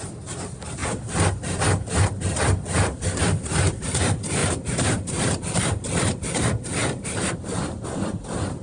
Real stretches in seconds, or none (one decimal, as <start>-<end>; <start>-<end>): none